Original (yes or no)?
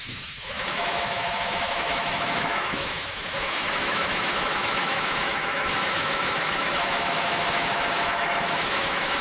no